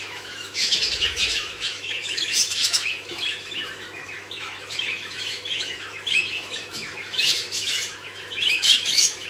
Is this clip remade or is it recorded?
remade